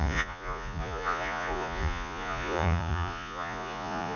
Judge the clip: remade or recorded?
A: remade